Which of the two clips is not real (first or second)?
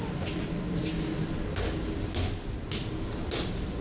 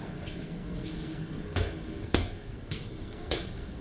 second